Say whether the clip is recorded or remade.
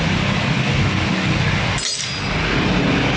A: recorded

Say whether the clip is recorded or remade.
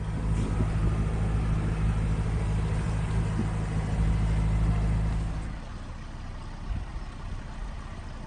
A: recorded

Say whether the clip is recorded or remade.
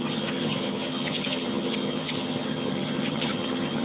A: remade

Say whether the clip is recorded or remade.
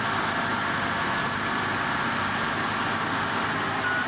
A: recorded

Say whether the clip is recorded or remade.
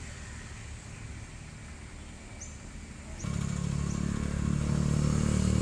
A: recorded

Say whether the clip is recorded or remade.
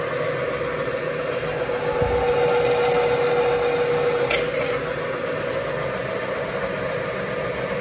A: recorded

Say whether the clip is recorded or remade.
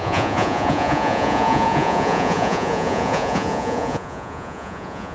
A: remade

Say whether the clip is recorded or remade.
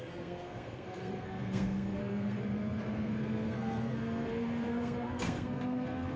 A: remade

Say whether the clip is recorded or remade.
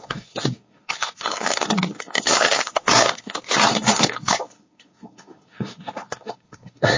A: remade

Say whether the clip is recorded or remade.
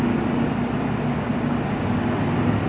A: recorded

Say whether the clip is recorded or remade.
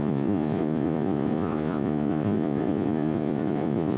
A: remade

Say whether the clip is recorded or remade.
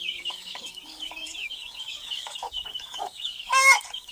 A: remade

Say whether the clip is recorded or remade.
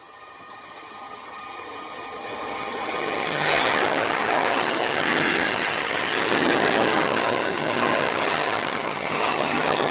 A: remade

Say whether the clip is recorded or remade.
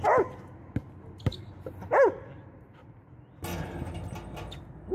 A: recorded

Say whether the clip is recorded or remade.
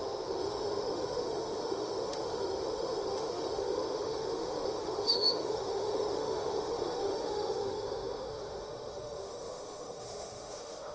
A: remade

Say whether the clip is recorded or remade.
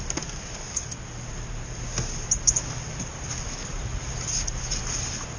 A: recorded